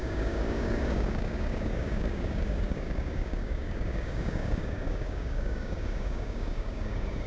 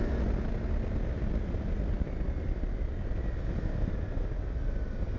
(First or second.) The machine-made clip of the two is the first